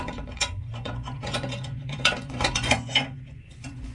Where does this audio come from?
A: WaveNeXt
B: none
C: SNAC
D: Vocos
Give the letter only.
D